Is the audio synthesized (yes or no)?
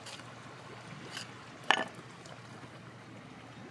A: no